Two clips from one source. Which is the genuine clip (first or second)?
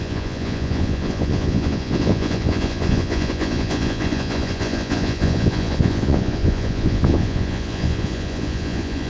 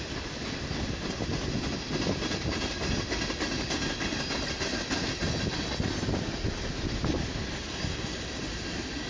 second